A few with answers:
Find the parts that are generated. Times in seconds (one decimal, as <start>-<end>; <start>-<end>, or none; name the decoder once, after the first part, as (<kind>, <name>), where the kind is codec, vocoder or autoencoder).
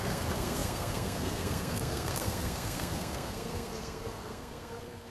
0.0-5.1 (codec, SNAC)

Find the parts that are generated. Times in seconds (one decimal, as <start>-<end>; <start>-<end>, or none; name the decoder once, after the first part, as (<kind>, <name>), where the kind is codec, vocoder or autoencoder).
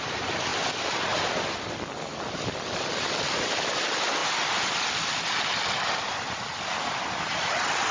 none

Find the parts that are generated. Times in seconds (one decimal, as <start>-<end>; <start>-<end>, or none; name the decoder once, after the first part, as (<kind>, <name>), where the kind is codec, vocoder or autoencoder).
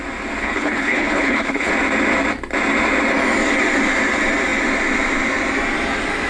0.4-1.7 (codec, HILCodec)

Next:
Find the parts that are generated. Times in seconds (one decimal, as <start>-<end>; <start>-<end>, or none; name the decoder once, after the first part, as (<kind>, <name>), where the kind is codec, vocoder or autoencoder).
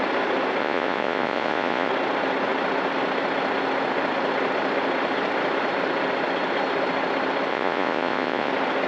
0.6-1.9 (vocoder, Vocos); 7.5-8.5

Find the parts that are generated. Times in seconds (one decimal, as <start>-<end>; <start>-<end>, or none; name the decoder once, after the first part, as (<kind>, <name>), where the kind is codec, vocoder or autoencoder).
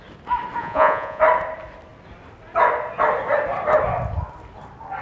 0.6-1.2 (vocoder, Vocos)